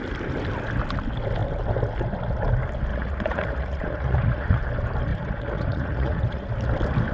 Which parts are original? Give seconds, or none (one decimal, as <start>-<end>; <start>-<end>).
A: 0.0-2.9; 4.6-5.1; 6.5-7.1